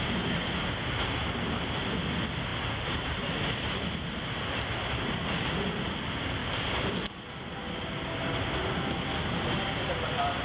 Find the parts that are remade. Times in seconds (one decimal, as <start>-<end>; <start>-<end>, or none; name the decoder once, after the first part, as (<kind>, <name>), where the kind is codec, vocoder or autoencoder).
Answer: none